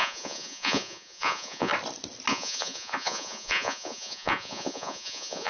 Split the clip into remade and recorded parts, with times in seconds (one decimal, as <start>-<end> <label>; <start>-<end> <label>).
0.0-1.7 remade; 1.7-2.3 recorded; 2.3-5.5 remade